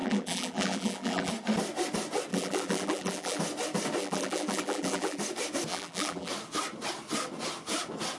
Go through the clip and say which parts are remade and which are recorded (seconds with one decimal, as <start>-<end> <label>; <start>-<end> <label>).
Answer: 0.0-1.3 remade; 1.3-2.3 recorded; 2.3-3.4 remade; 3.4-4.0 recorded; 4.0-5.2 remade; 5.2-5.7 recorded; 5.7-6.3 remade; 6.3-8.2 recorded